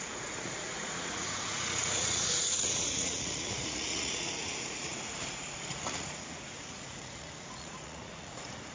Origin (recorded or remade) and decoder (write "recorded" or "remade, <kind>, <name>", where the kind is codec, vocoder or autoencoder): remade, vocoder, Vocos